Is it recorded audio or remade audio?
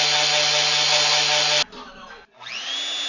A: recorded